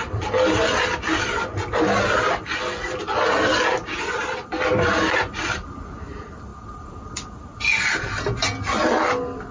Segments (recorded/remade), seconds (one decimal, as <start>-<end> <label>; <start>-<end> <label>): 0.0-9.5 recorded